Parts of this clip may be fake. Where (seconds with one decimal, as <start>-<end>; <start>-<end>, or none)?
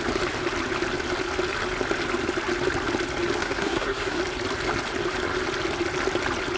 3.4-4.2